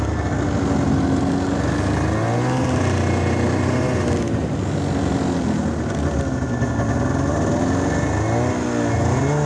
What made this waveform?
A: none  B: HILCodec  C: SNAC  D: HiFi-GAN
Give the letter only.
A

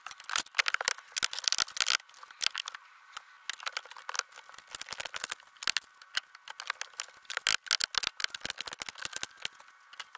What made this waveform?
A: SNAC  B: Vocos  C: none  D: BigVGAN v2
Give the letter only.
C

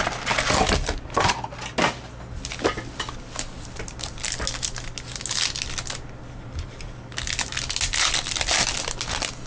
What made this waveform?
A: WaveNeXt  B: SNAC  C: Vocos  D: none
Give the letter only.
D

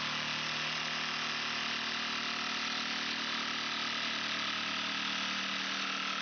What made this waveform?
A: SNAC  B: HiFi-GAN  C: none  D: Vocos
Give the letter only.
C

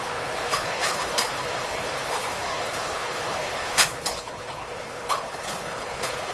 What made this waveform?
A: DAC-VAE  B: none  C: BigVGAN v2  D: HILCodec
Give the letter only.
D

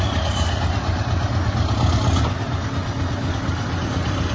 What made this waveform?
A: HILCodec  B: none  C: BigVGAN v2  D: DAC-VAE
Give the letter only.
B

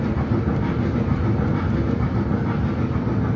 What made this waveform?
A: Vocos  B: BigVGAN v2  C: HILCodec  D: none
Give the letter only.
D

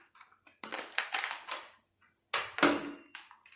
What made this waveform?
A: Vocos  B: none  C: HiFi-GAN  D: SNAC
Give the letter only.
B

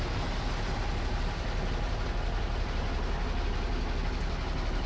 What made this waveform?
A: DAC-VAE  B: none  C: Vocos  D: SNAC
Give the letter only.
B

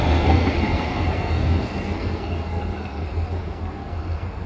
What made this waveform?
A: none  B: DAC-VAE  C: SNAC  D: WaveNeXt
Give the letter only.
C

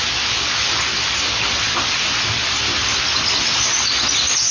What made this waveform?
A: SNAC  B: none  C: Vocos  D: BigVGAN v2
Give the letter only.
B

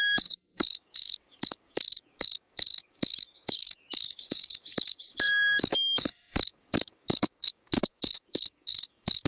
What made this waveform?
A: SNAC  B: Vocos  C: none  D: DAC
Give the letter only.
D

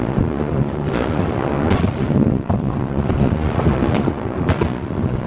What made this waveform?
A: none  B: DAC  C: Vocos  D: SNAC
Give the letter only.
C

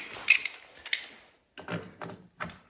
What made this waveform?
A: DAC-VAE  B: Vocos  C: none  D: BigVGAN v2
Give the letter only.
C